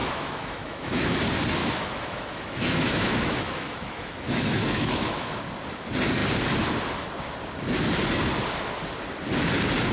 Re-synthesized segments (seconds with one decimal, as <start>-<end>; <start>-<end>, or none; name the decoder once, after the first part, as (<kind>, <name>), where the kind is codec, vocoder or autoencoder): 0.0-1.2 (autoencoder, DAC-VAE); 1.6-5.4